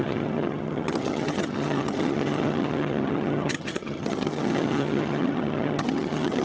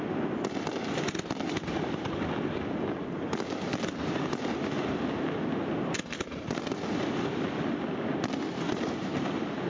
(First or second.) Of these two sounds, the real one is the second